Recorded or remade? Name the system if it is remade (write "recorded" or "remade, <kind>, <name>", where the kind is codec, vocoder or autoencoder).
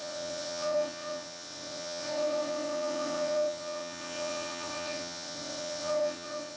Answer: remade, vocoder, WaveNeXt